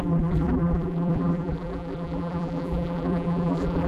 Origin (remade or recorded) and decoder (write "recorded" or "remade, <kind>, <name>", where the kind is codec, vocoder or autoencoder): remade, vocoder, BigVGAN v2